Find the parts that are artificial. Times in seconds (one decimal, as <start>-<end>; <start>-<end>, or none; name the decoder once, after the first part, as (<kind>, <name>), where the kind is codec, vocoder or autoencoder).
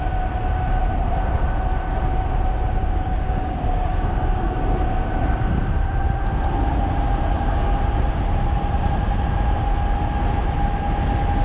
2.8-4.5 (codec, DAC); 7.2-7.8